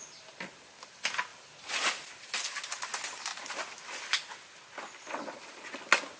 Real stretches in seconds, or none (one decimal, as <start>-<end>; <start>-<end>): 0.0-6.2